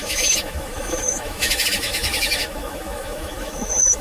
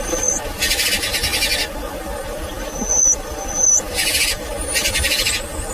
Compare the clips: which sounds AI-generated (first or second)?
first